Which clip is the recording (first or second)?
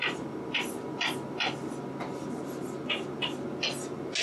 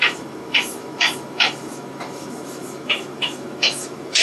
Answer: first